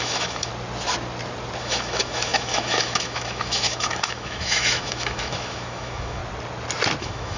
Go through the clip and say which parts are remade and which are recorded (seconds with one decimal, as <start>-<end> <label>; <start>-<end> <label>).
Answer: 0.0-0.5 remade; 0.5-1.6 recorded; 1.6-6.2 remade; 6.2-7.0 recorded; 7.0-7.4 remade